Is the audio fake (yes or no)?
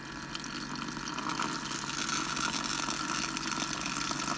no